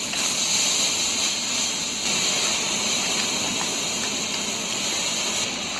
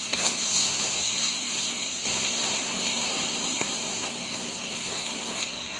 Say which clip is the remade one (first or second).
second